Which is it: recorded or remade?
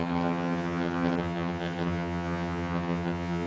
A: remade